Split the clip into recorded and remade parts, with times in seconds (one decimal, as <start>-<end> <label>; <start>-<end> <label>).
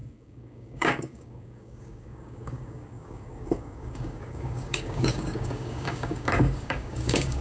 0.0-7.4 remade